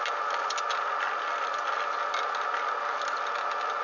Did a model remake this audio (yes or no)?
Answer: no